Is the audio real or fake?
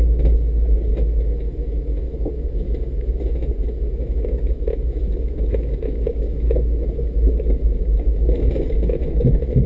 fake